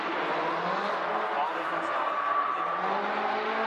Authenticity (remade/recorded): recorded